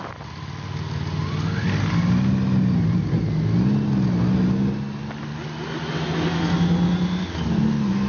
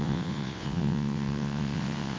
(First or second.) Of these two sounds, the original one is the first